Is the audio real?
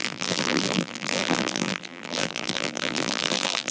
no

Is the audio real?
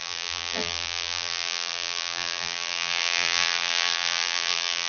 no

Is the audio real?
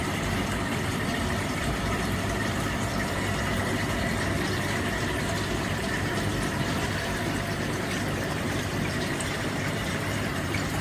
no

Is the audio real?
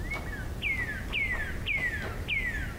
yes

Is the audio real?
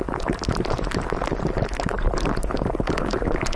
no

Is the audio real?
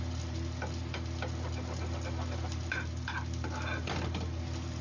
yes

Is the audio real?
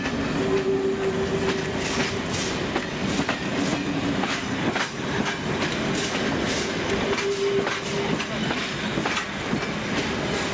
yes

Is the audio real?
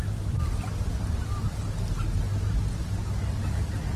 no